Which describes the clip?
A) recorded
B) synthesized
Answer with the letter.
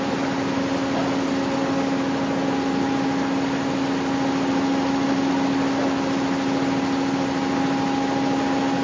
A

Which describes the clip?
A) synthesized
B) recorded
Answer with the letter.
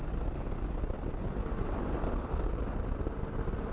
B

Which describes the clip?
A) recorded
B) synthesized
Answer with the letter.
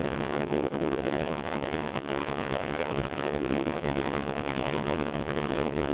B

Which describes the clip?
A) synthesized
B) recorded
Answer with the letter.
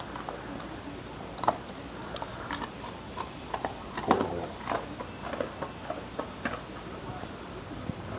B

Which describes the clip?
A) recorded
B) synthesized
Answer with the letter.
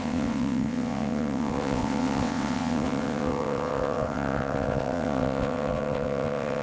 B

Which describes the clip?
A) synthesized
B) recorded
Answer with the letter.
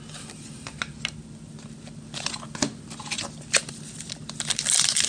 B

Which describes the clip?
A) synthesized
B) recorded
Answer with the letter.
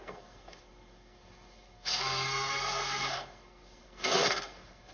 A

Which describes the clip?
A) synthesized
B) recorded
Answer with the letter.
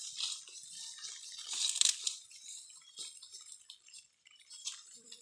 B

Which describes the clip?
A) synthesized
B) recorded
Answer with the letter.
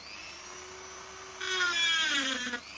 B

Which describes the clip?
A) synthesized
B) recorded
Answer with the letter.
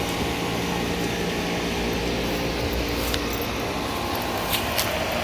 B